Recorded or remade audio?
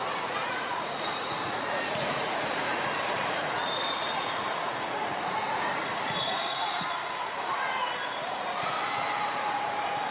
remade